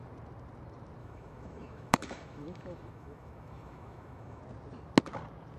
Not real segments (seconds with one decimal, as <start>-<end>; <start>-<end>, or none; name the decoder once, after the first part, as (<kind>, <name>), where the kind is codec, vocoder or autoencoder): 1.0-4.4 (autoencoder, DAC-VAE)